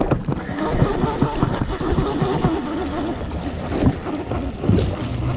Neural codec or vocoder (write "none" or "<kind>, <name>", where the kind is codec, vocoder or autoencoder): none